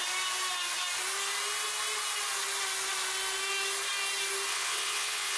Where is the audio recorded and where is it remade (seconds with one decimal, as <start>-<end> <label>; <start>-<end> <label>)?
0.0-4.5 recorded; 4.5-5.4 remade